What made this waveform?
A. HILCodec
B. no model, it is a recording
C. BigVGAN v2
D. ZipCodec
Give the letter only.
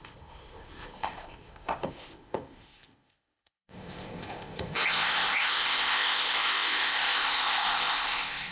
D